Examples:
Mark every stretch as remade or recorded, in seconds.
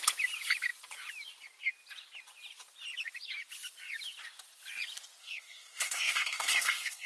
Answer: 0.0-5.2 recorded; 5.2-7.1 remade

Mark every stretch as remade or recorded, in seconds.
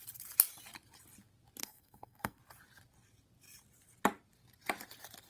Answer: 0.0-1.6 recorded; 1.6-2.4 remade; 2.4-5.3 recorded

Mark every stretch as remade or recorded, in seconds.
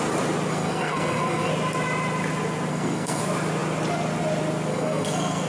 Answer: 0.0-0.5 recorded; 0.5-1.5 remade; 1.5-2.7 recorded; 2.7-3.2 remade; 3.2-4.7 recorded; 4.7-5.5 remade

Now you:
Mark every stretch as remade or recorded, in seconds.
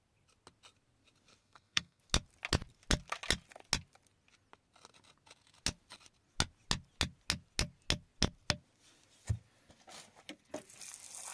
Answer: 0.0-1.4 recorded; 1.4-2.0 remade; 2.0-11.3 recorded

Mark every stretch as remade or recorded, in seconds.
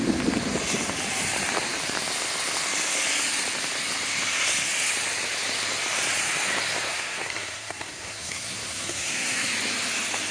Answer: 0.0-6.9 recorded; 6.9-9.5 remade; 9.5-10.3 recorded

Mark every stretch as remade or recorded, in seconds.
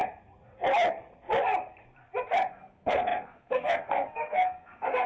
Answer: 0.0-2.5 recorded; 2.5-5.1 remade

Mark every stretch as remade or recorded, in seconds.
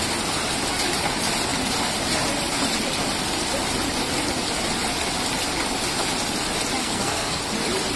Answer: 0.0-6.8 recorded; 6.8-7.4 remade; 7.4-8.0 recorded